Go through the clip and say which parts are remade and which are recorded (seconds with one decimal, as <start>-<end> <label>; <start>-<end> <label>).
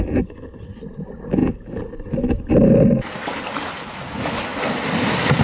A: 0.0-5.4 recorded